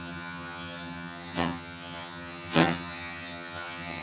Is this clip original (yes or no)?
no